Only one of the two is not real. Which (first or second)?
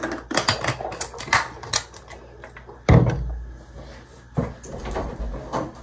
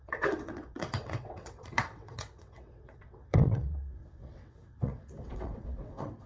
second